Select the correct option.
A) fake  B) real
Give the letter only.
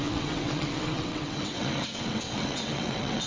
A